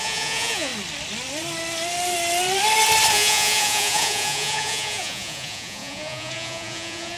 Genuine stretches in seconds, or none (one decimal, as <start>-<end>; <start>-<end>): 0.7-3.1